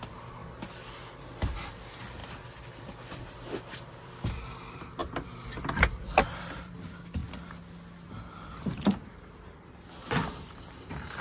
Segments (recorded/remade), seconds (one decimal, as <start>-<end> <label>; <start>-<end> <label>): 0.0-0.4 remade; 0.4-1.5 recorded; 1.5-7.2 remade; 7.2-10.5 recorded; 10.5-11.2 remade